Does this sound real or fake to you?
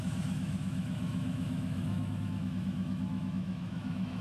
fake